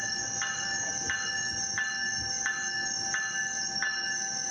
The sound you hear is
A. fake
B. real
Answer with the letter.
B